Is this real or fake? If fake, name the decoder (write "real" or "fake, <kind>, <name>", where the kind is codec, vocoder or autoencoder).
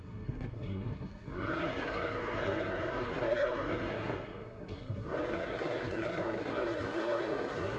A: fake, codec, SNAC